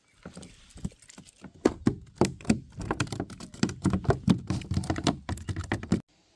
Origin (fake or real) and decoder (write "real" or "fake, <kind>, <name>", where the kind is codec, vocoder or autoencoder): real